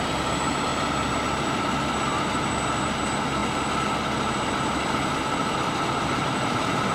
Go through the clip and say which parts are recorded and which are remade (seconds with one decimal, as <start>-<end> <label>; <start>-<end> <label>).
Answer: 0.0-0.7 remade; 0.7-2.1 recorded; 2.1-3.4 remade; 3.4-6.1 recorded; 6.1-6.9 remade

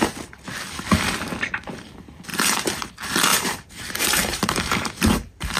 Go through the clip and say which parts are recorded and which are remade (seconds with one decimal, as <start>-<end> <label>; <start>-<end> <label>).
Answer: 0.0-2.3 recorded; 2.3-2.9 remade; 2.9-3.3 recorded; 3.3-5.6 remade

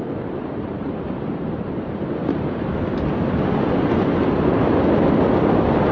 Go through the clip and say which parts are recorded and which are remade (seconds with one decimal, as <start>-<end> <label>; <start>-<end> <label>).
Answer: 0.0-2.9 remade; 2.9-3.8 recorded; 3.8-5.9 remade

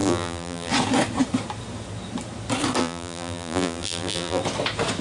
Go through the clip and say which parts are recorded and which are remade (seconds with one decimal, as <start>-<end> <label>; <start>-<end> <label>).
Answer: 0.0-0.7 remade; 0.7-2.8 recorded; 2.8-4.4 remade; 4.4-5.0 recorded

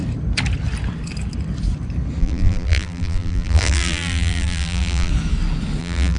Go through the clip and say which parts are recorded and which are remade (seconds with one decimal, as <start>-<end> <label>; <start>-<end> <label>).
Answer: 0.0-2.2 recorded; 2.2-5.1 remade; 5.1-5.8 recorded; 5.8-6.2 remade

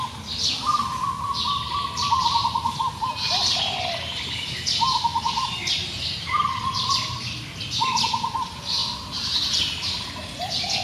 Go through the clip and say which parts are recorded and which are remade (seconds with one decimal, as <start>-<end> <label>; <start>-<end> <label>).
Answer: 0.0-5.1 recorded; 5.1-6.6 remade; 6.6-10.8 recorded

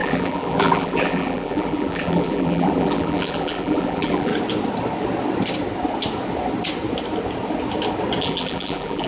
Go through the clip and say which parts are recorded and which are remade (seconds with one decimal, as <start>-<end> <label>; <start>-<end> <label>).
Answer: 0.0-4.3 remade; 4.3-8.2 recorded; 8.2-9.1 remade

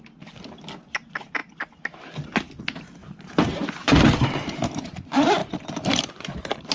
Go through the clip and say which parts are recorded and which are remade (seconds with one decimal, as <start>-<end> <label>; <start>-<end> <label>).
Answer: 0.0-3.0 recorded; 3.0-4.7 remade; 4.7-5.4 recorded; 5.4-6.7 remade